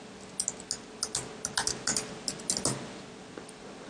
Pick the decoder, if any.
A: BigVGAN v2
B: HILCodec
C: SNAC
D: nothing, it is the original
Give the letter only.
D